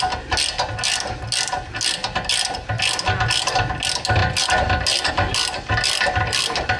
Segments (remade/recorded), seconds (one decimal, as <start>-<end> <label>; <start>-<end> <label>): 0.0-6.8 recorded